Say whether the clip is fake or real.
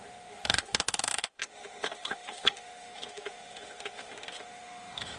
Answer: fake